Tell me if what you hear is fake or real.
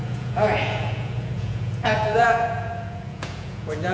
fake